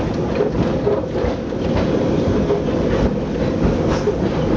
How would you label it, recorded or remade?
recorded